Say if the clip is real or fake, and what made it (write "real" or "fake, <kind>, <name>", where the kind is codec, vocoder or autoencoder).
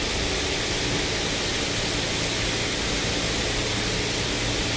real